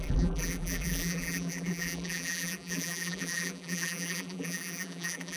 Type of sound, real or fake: fake